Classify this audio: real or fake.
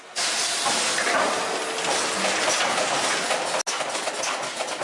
real